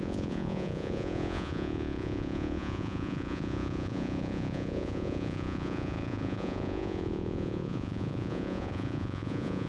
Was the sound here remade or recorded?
remade